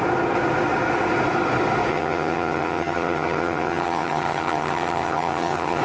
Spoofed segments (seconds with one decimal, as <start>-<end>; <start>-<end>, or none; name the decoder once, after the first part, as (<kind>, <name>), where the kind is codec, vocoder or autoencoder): 1.9-5.8 (vocoder, HiFi-GAN)